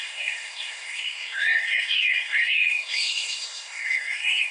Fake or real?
fake